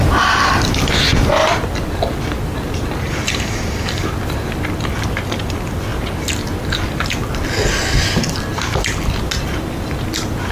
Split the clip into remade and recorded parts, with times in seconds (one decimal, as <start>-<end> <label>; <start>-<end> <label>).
0.0-10.5 recorded